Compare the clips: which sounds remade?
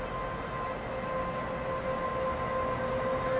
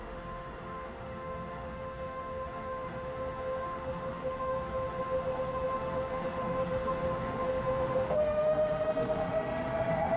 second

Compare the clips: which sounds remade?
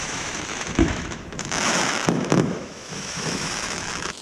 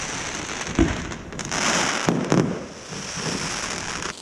first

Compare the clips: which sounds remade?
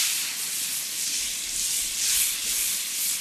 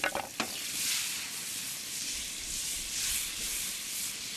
second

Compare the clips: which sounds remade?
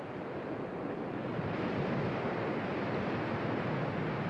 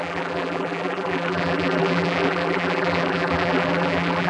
second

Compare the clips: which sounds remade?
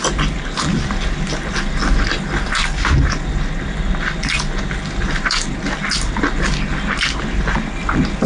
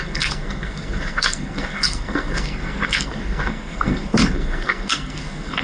second